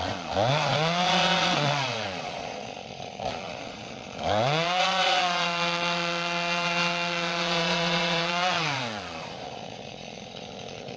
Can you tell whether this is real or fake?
fake